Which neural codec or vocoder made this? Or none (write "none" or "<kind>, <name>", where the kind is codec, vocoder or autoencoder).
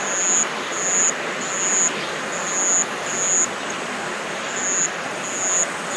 none